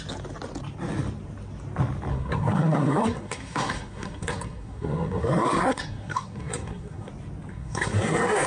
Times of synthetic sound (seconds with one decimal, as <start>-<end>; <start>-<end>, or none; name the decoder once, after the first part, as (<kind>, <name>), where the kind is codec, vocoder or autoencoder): 2.1-7.1 (codec, SNAC); 7.5-8.5